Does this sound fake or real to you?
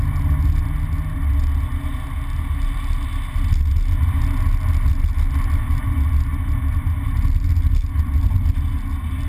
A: real